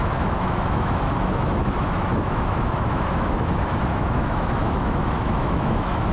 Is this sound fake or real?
fake